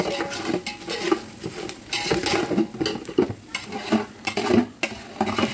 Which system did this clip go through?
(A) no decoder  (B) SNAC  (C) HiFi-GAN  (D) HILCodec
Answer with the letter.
A